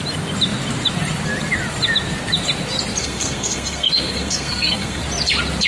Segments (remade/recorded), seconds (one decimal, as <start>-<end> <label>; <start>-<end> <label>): 0.0-3.0 recorded; 3.0-5.0 remade; 5.0-5.7 recorded